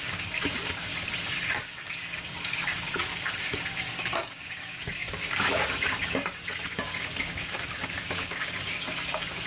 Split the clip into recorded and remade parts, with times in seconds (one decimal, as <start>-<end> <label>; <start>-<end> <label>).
0.0-0.9 remade; 0.9-1.5 recorded; 1.5-9.5 remade